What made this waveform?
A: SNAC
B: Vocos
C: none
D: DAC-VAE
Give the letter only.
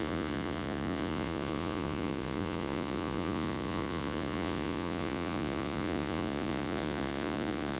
B